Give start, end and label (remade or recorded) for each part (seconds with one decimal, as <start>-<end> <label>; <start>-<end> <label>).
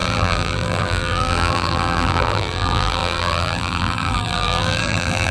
0.0-5.3 remade